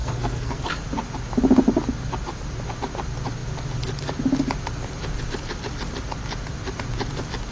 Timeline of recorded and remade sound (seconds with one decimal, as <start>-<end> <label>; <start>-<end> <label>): 0.0-0.6 remade; 0.6-7.5 recorded